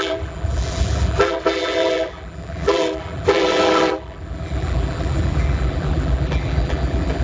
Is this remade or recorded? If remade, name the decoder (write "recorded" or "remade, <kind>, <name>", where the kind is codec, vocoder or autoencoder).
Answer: remade, vocoder, BigVGAN v2